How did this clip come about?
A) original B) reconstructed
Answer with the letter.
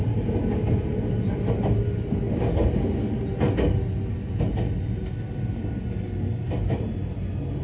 A